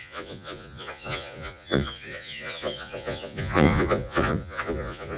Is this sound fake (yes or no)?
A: yes